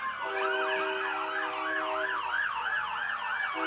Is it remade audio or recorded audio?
recorded